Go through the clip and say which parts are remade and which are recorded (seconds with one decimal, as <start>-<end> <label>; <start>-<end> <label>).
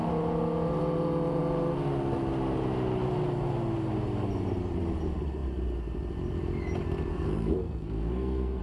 0.0-7.1 recorded; 7.1-8.6 remade